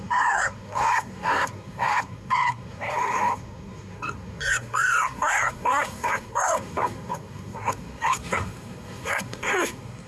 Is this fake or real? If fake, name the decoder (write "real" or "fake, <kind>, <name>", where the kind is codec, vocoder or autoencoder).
fake, codec, SNAC